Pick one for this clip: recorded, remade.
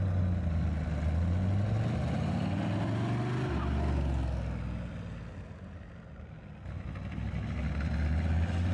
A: recorded